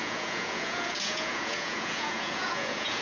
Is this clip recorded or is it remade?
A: remade